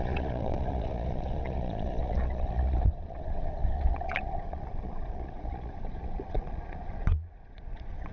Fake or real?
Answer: fake